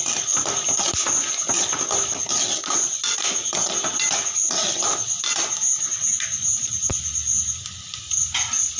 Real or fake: real